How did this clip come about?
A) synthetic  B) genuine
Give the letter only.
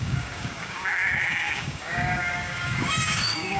A